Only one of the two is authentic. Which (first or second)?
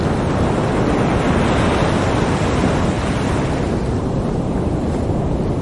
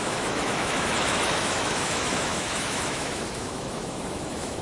first